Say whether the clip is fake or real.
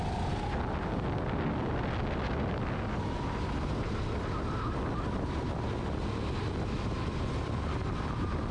real